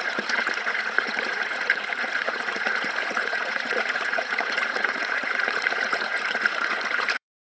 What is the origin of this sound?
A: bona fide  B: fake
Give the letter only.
B